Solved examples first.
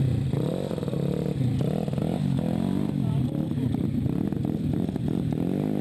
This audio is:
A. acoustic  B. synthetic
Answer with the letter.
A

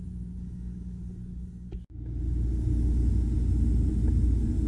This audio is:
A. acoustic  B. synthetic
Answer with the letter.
A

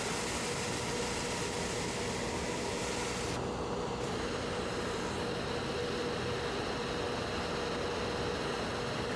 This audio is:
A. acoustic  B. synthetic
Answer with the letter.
A